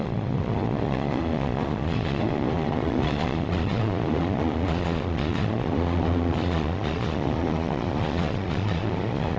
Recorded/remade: remade